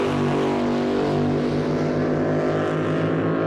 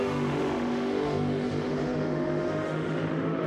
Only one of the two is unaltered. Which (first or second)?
first